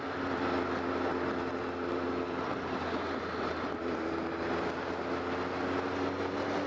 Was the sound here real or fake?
real